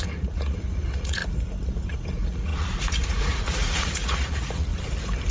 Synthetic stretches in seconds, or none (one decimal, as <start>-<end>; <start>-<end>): 0.0-1.2; 1.7-4.7